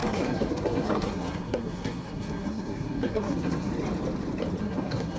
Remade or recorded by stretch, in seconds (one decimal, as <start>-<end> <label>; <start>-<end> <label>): 0.0-3.7 remade; 3.7-4.6 recorded; 4.6-5.2 remade